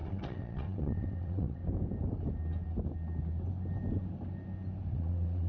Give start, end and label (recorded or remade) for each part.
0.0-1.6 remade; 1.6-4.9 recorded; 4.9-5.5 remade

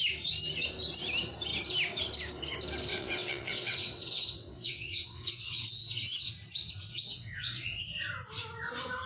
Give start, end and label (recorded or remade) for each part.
0.0-2.9 recorded; 2.9-6.3 remade; 6.3-6.9 recorded; 6.9-8.0 remade; 8.0-9.1 recorded

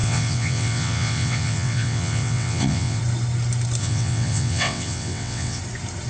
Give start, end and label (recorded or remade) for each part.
0.0-3.0 remade; 3.0-3.8 recorded; 3.8-5.6 remade; 5.6-6.1 recorded

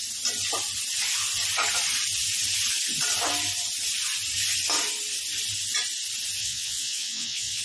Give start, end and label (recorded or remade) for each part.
0.0-6.4 recorded; 6.4-7.6 remade

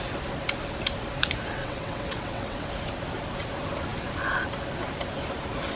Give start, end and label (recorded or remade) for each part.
0.0-1.6 recorded; 1.6-2.7 remade; 2.7-5.8 recorded

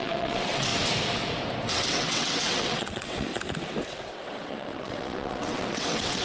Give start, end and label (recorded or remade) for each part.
0.0-0.7 remade; 0.7-1.7 recorded; 1.7-3.3 remade; 3.3-3.9 recorded; 3.9-6.2 remade